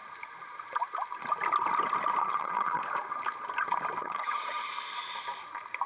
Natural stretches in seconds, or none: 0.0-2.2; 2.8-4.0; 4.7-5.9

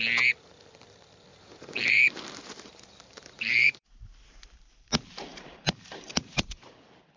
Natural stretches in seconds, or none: 0.0-1.3; 4.0-5.3; 6.7-7.2

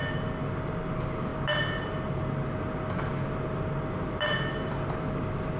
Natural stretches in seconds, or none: 0.0-5.6

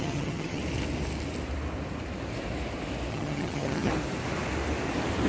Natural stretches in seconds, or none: 0.6-3.1; 3.9-5.3

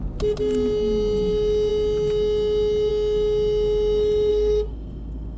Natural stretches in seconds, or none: 0.0-4.3

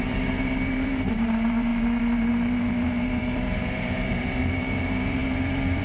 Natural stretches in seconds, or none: none

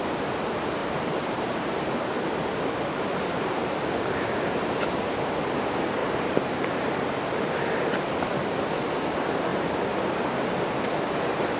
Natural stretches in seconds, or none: 0.0-0.8; 1.9-6.0; 7.0-11.6

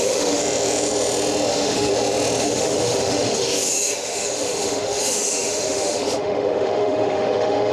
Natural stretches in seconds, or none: 0.4-1.5; 1.9-2.4